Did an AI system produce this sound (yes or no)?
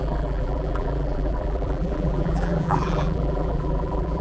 yes